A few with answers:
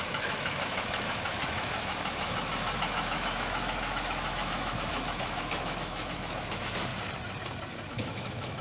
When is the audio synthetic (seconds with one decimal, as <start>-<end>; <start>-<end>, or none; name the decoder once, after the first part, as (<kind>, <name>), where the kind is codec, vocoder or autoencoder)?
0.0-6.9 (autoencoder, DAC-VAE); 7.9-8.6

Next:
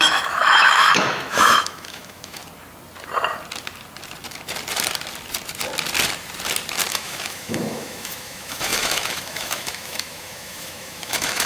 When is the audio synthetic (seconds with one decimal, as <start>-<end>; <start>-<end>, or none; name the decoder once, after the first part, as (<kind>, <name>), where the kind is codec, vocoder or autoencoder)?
0.0-2.4 (autoencoder, DAC-VAE); 6.9-11.5

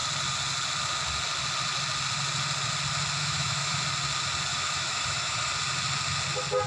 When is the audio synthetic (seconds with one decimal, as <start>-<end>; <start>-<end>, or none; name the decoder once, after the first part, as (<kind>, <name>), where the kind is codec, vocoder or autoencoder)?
3.2-3.8 (autoencoder, DAC-VAE); 4.5-5.5

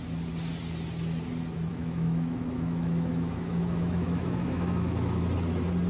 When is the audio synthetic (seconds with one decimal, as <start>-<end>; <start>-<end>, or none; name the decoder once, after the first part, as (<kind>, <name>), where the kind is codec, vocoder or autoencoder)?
1.7-5.2 (autoencoder, DAC-VAE)

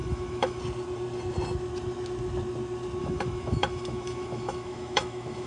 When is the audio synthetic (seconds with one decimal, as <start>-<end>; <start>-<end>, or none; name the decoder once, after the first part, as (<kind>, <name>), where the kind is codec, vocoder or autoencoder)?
0.0-0.6 (autoencoder, DAC-VAE); 3.0-5.5

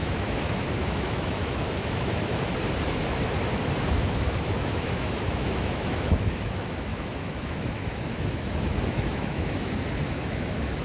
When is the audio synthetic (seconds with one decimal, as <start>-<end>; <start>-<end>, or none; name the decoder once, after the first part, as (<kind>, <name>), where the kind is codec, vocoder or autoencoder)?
0.0-2.5 (autoencoder, DAC-VAE); 3.9-10.8

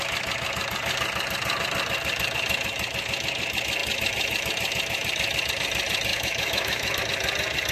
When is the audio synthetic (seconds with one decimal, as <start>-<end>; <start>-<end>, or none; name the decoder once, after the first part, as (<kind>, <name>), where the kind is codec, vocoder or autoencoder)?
6.1-7.0 (autoencoder, DAC-VAE)